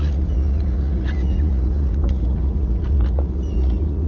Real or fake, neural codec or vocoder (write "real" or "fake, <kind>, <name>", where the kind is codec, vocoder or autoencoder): fake, vocoder, Vocos